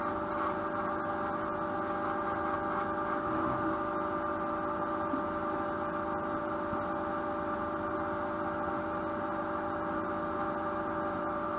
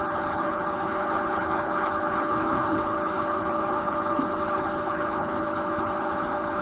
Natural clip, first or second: first